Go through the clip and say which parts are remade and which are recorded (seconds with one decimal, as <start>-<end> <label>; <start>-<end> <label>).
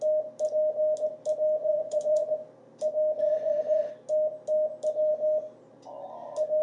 0.0-1.6 recorded; 1.6-2.3 remade; 2.3-3.2 recorded; 3.2-3.9 remade; 3.9-6.6 recorded